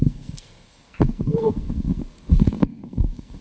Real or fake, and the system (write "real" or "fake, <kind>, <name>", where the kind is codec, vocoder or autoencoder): fake, codec, SNAC